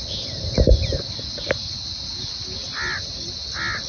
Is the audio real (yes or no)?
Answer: yes